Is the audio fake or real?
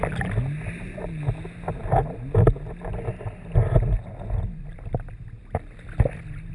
real